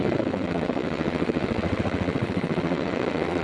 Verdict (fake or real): fake